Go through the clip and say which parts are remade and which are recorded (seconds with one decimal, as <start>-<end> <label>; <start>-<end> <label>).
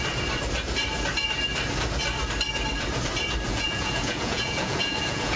0.0-3.5 recorded; 3.5-5.4 remade